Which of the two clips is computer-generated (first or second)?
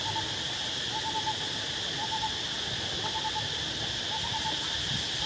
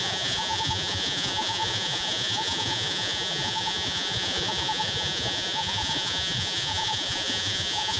second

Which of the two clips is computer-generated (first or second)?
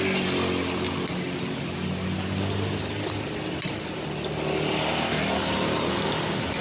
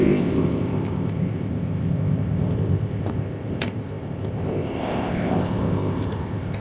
second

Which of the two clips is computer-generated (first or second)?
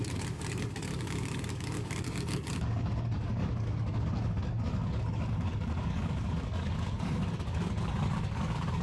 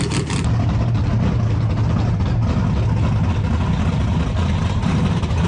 first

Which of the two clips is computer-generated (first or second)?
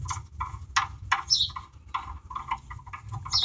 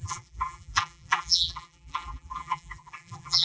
second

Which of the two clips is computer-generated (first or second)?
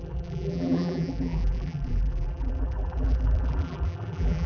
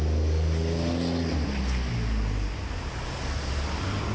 first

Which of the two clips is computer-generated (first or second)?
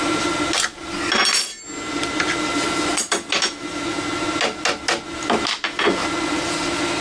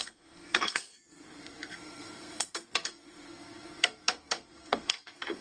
second